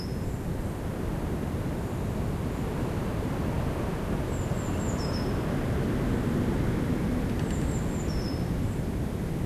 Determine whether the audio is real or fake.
real